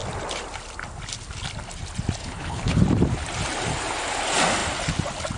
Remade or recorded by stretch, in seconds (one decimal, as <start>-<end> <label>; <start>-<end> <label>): 0.0-2.2 recorded; 2.2-2.8 remade; 2.8-5.4 recorded